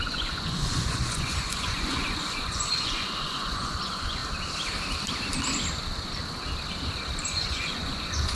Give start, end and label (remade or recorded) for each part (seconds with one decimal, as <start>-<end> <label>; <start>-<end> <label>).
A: 0.0-4.2 remade; 4.2-7.2 recorded; 7.2-8.4 remade